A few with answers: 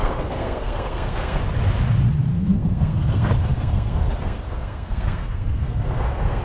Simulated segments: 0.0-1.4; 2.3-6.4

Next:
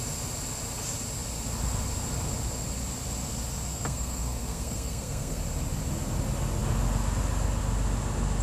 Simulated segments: 3.7-5.4

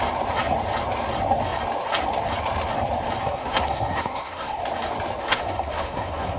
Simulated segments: 3.2-4.6; 5.3-6.4